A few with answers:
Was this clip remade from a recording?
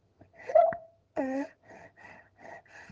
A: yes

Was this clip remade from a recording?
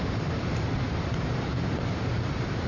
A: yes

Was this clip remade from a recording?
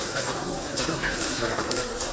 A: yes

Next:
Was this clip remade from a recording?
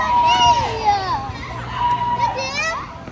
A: no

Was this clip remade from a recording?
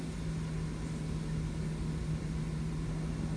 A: no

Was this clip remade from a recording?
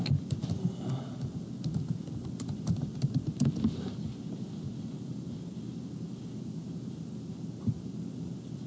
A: no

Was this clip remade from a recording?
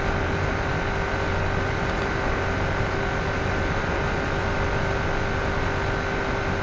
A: no